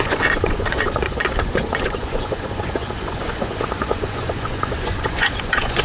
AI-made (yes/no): yes